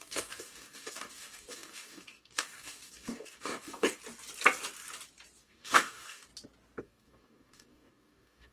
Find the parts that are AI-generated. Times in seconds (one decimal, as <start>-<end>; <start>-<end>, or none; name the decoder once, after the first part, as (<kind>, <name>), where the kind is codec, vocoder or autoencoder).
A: 0.0-4.0 (codec, DAC); 5.4-6.3; 6.8-8.5